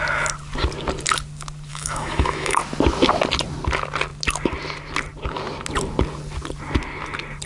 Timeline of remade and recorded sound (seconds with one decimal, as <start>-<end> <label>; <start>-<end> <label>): 0.0-1.7 recorded; 1.7-2.6 remade; 2.6-7.5 recorded